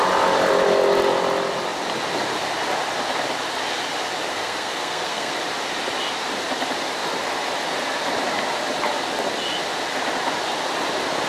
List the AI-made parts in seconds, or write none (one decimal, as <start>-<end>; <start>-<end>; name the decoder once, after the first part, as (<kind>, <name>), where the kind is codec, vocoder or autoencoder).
4.3-5.3 (codec, SNAC)